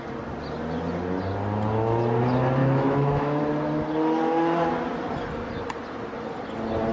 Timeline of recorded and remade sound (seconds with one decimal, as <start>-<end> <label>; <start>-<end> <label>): 0.0-2.6 recorded; 2.6-3.4 remade; 3.4-6.9 recorded